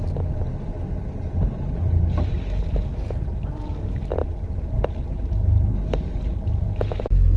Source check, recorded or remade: recorded